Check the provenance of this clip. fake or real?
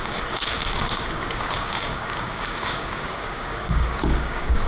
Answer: fake